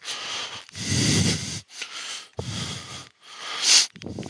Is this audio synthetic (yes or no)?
no